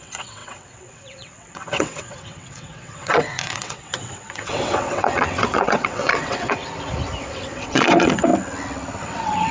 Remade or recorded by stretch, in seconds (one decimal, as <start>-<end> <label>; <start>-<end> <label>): 0.0-6.6 remade; 6.6-7.2 recorded; 7.2-8.3 remade; 8.3-9.0 recorded; 9.0-9.5 remade